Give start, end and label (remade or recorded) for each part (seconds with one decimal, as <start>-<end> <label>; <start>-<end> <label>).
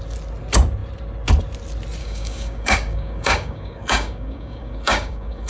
0.0-2.0 recorded; 2.0-5.5 remade